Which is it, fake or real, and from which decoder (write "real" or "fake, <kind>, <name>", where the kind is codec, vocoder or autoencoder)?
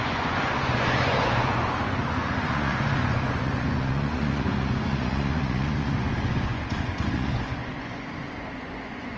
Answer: fake, vocoder, Vocos